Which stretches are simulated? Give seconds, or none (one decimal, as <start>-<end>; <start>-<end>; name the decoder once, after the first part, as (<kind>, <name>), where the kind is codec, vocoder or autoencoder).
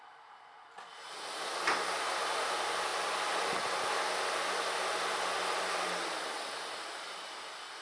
none